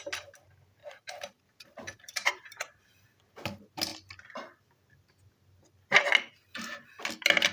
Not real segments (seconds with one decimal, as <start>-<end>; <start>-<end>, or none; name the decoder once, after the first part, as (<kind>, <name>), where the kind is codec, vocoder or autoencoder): 0.8-3.3 (vocoder, BigVGAN v2)